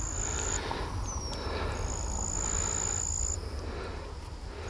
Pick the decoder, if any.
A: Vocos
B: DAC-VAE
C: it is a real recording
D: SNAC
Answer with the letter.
C